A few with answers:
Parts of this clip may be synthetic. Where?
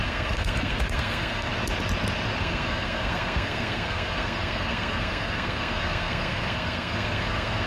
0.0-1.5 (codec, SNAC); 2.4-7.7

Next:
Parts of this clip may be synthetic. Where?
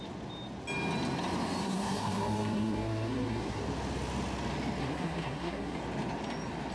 1.6-3.6 (codec, SNAC); 4.8-5.8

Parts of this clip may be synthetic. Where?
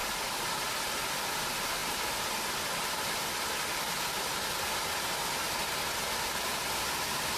none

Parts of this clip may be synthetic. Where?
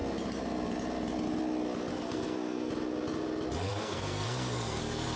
1.9-2.7 (codec, SNAC); 3.7-4.8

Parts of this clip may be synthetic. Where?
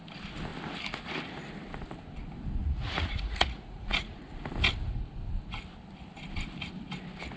2.6-4.3 (vocoder, Vocos)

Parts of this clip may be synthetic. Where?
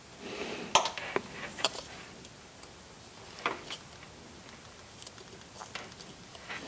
1.5-2.1 (vocoder, BigVGAN v2)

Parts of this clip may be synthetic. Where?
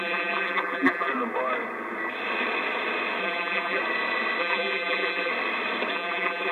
0.0-1.1 (vocoder, BigVGAN v2); 3.2-3.8; 4.4-5.3; 5.9-6.5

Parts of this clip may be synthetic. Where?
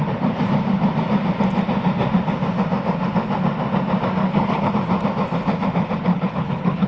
4.2-4.7 (codec, HILCodec); 6.1-6.9